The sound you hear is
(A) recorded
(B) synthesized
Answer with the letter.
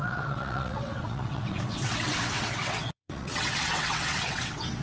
B